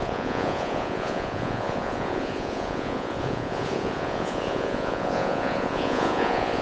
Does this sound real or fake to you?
fake